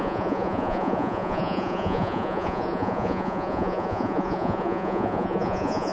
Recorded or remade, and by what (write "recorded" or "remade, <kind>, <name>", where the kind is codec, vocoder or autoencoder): remade, vocoder, Vocos